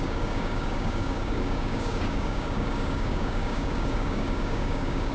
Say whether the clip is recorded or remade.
remade